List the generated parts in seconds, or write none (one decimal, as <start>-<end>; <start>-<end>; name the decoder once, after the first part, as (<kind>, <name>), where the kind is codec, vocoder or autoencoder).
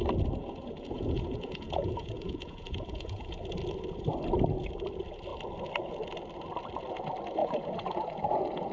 0.4-3.4 (vocoder, Vocos); 7.4-8.7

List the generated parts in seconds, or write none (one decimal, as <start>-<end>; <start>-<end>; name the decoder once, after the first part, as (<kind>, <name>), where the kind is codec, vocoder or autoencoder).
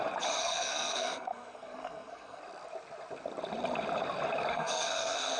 0.4-2.4 (codec, SNAC); 4.5-5.4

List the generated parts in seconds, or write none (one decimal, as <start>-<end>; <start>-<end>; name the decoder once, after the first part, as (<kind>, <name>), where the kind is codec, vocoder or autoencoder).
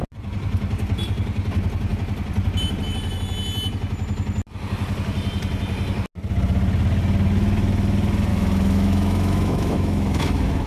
8.3-10.7 (autoencoder, DAC-VAE)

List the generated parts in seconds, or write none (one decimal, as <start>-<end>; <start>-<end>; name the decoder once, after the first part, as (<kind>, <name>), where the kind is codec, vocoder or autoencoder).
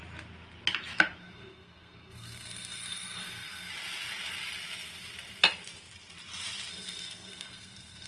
1.2-3.7 (codec, SNAC); 6.7-8.1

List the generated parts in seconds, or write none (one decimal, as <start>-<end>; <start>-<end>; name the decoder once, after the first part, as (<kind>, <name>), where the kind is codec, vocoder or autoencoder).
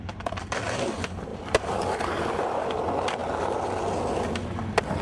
1.3-2.7 (vocoder, BigVGAN v2)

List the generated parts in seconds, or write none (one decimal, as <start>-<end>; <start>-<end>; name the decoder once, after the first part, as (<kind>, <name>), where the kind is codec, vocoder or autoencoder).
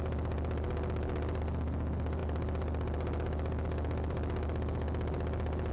none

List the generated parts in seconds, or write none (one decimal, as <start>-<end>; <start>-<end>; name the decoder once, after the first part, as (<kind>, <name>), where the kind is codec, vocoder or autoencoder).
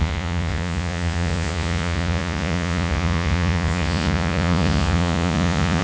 0.0-5.8 (vocoder, Vocos)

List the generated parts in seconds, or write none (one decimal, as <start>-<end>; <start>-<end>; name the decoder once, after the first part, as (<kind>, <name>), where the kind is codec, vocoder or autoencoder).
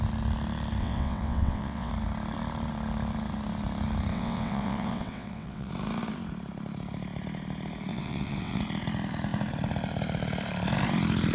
0.8-1.9 (vocoder, WaveNeXt); 4.1-5.7; 7.9-8.6